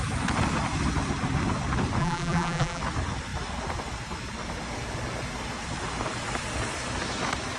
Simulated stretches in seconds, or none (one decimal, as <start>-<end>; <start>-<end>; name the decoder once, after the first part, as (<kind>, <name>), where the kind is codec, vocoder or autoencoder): 2.0-2.8 (vocoder, BigVGAN v2)